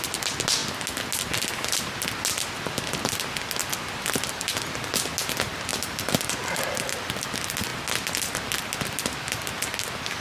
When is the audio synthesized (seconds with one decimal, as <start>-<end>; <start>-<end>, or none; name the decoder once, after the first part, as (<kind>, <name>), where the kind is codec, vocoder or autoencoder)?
5.7-6.6 (vocoder, BigVGAN v2)